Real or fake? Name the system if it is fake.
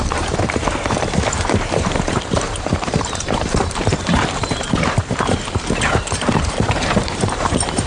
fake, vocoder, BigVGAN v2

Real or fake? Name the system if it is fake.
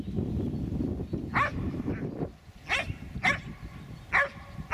real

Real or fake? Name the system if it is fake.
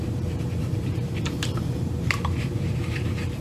fake, vocoder, BigVGAN v2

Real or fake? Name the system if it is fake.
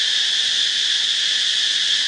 real